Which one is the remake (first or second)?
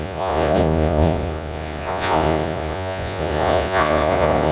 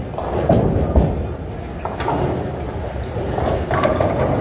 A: first